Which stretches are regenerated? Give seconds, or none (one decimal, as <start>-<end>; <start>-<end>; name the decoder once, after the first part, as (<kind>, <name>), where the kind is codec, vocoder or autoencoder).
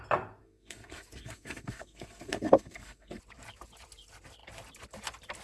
0.4-3.2 (codec, SNAC)